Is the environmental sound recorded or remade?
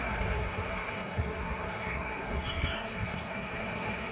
remade